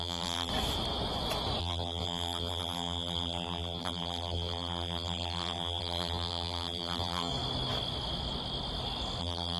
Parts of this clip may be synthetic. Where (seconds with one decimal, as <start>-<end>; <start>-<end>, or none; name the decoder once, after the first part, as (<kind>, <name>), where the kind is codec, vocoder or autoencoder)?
0.0-0.5 (vocoder, BigVGAN v2); 1.6-7.3; 9.2-9.6